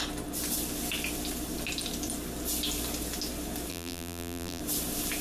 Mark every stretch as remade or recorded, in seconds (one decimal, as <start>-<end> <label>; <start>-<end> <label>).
0.0-3.7 recorded; 3.7-4.6 remade; 4.6-5.2 recorded